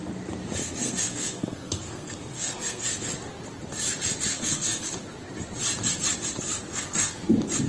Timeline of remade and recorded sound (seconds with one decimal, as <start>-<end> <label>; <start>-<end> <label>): 0.0-0.6 recorded; 0.6-3.1 remade; 3.1-4.3 recorded; 4.3-4.9 remade; 4.9-6.7 recorded; 6.7-7.2 remade; 7.2-7.7 recorded